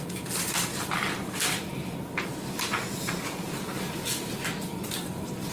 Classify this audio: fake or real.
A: fake